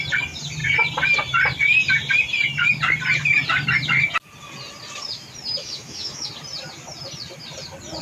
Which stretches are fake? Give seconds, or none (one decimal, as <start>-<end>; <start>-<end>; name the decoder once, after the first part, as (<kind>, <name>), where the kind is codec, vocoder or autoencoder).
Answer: 5.6-6.3 (autoencoder, DAC-VAE)

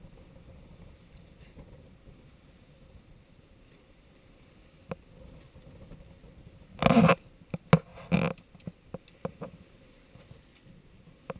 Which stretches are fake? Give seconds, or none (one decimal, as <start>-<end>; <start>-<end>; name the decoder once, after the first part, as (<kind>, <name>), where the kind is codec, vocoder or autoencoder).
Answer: none

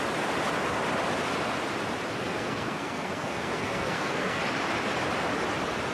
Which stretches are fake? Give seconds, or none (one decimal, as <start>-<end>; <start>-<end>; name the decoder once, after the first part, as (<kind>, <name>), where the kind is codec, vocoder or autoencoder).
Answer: 2.2-4.4 (codec, SNAC)

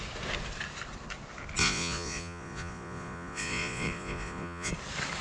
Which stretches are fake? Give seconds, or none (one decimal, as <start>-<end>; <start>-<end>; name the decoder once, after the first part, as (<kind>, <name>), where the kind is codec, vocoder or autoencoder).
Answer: 1.6-4.7 (vocoder, Vocos)

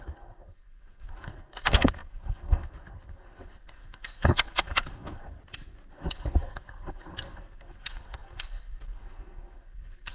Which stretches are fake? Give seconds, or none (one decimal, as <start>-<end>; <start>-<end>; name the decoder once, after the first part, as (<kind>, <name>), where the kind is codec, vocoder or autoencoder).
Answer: 0.0-5.4 (codec, SNAC); 5.9-10.1

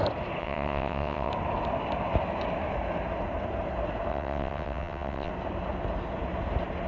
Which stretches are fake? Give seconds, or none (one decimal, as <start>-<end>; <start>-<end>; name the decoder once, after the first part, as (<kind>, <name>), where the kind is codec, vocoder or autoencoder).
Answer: 0.4-1.3 (vocoder, WaveNeXt); 4.1-5.3

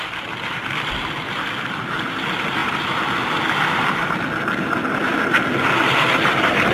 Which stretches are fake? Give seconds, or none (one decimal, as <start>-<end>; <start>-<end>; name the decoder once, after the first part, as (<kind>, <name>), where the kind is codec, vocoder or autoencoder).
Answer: none

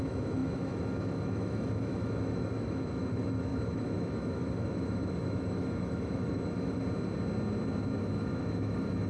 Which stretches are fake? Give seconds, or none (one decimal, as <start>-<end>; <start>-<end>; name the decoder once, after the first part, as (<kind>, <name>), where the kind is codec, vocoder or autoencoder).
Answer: 0.0-6.8 (autoencoder, DAC-VAE); 8.0-9.1